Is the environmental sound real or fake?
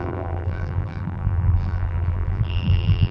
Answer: fake